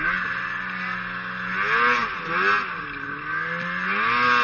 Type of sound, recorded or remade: recorded